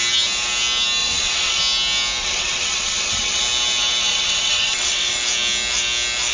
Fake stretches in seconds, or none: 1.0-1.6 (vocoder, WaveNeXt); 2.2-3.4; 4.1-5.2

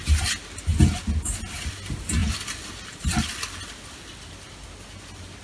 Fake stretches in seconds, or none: none